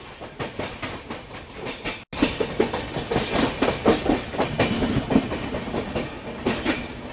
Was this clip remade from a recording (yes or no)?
no